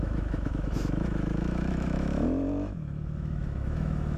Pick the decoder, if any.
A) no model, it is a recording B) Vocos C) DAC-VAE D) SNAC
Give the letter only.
C